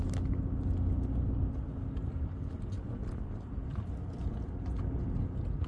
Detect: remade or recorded recorded